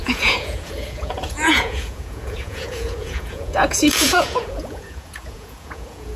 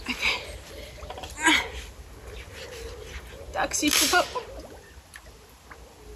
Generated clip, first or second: first